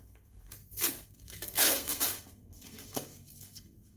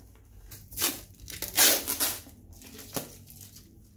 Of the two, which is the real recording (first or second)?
second